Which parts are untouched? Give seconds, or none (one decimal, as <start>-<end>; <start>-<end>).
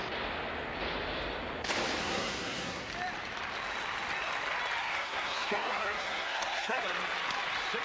0.0-2.0; 2.9-4.8; 6.8-7.8